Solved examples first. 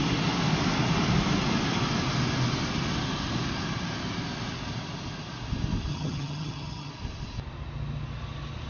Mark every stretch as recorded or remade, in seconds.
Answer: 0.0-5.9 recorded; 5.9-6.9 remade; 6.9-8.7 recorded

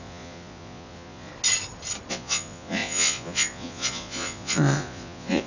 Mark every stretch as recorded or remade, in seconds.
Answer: 0.0-1.3 remade; 1.3-2.1 recorded; 2.1-5.5 remade

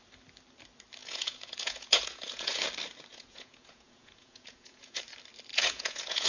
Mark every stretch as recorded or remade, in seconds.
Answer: 0.0-1.0 recorded; 1.0-2.7 remade; 2.7-3.1 recorded; 3.1-5.0 remade; 5.0-5.5 recorded; 5.5-6.3 remade

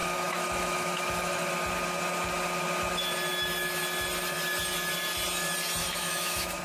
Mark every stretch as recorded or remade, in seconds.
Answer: 0.0-1.5 remade; 1.5-5.8 recorded; 5.8-6.6 remade

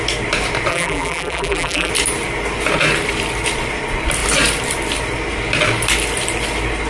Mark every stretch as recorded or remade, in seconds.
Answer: 0.0-0.7 recorded; 0.7-1.9 remade; 1.9-6.9 recorded